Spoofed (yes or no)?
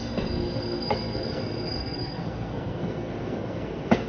yes